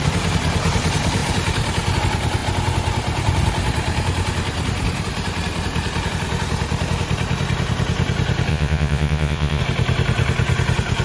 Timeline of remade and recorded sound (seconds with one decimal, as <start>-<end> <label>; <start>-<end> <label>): 0.0-8.5 recorded; 8.5-9.6 remade; 9.6-11.0 recorded